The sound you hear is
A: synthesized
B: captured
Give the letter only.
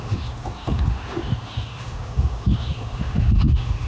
A